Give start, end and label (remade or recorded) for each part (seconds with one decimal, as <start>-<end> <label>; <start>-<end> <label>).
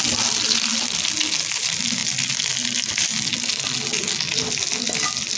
0.0-5.4 recorded